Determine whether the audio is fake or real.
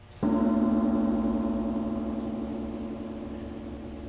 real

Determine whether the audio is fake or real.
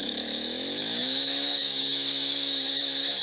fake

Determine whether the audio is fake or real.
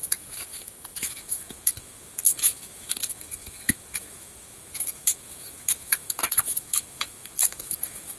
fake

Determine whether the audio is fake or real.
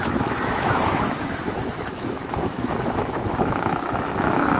fake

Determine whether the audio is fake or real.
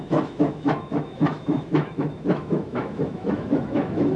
fake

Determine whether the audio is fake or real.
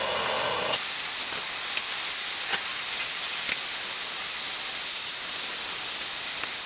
real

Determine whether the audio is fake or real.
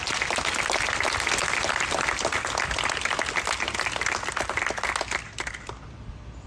real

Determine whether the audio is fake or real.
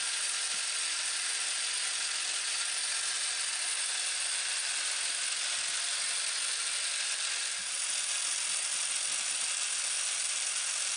real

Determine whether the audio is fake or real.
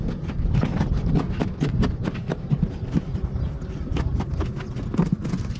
real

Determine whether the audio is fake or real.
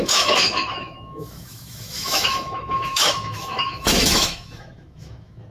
fake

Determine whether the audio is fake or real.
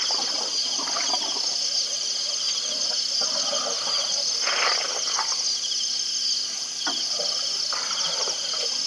real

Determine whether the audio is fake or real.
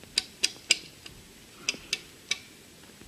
real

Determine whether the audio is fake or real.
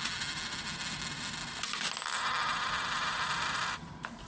real